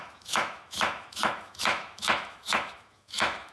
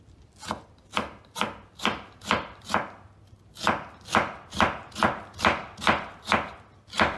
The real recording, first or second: second